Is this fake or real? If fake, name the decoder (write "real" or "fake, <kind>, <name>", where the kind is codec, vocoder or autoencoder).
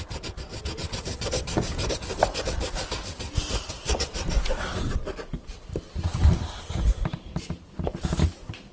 real